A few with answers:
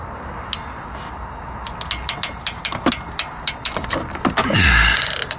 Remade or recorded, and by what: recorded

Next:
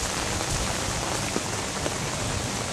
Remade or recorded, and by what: recorded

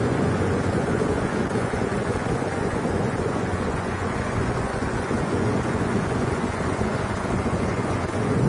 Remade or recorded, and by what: remade, vocoder, Vocos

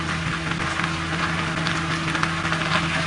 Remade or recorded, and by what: recorded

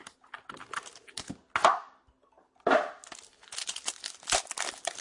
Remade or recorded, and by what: recorded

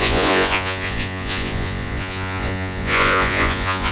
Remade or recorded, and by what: remade, vocoder, Vocos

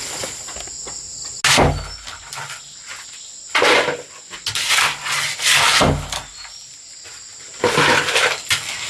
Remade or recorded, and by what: recorded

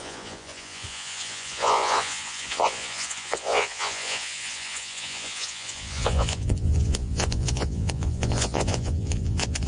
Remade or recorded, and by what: remade, vocoder, Vocos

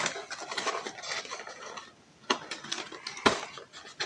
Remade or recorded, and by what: recorded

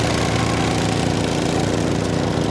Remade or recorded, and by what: recorded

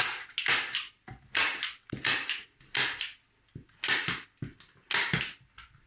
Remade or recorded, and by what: recorded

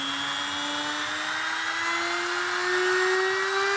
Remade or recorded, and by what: recorded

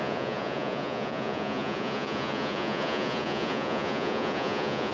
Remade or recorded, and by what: remade, vocoder, Vocos